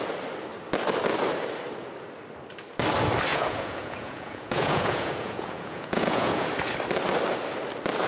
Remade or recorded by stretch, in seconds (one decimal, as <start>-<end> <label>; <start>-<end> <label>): 0.0-3.3 recorded; 3.3-6.5 remade; 6.5-8.1 recorded